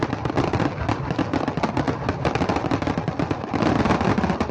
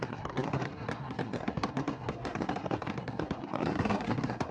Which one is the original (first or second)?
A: first